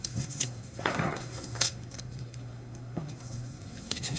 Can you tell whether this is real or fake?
fake